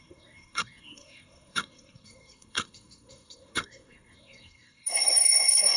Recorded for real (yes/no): no